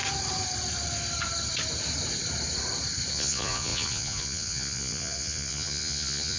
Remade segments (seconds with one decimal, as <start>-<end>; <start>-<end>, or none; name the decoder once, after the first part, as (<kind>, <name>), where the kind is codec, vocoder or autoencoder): 3.1-6.4 (vocoder, Vocos)